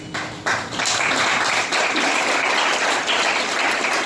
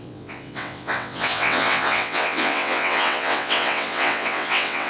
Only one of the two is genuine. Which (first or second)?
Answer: first